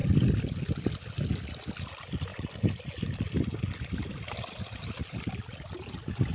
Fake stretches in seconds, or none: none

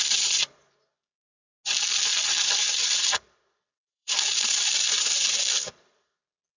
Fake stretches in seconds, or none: 2.1-5.2 (vocoder, BigVGAN v2)

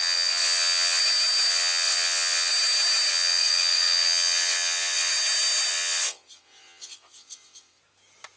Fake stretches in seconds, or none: 0.0-1.0 (vocoder, WaveNeXt); 1.5-2.5; 3.1-5.1; 5.7-7.8

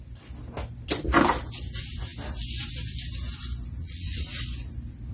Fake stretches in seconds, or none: 3.8-4.4 (vocoder, Vocos)

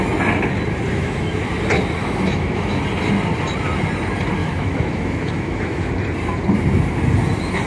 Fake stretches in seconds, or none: 0.9-1.5 (autoencoder, DAC-VAE); 2.0-2.8; 4.4-5.9